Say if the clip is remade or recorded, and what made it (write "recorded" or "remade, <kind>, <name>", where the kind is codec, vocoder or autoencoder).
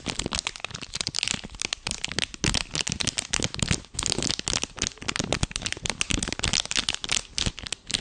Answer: recorded